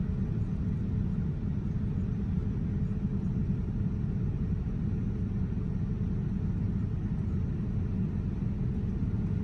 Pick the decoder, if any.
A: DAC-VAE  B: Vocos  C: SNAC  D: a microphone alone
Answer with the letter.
D